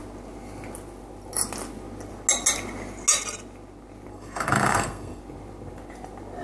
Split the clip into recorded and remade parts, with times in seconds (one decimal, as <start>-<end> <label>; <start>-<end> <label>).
0.0-4.1 recorded; 4.1-5.2 remade; 5.2-6.4 recorded